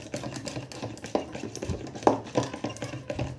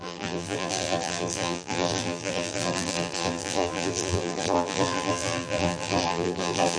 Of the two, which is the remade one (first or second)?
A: second